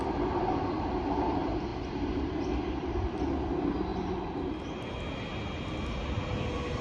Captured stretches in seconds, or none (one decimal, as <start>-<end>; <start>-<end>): 0.0-6.8